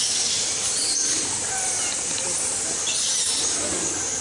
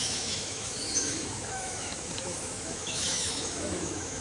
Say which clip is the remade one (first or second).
second